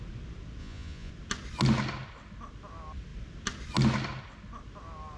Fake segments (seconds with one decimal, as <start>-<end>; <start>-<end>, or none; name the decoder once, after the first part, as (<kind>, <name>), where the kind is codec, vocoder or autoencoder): 0.6-1.1 (vocoder, Vocos)

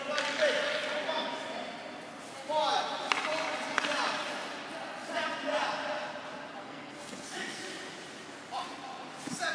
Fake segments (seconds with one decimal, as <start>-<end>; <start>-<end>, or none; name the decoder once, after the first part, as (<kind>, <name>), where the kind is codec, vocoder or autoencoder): 6.6-7.6 (codec, SNAC)

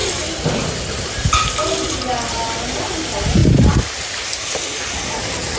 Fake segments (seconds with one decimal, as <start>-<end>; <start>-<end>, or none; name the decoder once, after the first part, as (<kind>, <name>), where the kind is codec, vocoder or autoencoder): 0.0-1.1 (vocoder, BigVGAN v2); 3.4-4.5